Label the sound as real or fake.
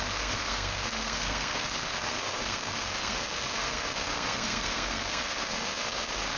fake